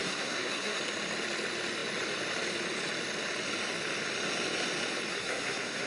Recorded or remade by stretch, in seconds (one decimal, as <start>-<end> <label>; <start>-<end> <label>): 0.0-0.8 remade; 0.8-5.1 recorded; 5.1-5.9 remade